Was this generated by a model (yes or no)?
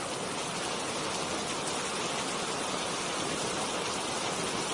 no